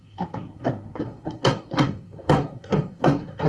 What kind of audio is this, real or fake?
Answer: fake